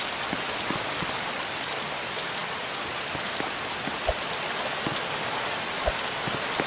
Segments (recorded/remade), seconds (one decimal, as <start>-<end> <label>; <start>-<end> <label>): 0.0-6.7 recorded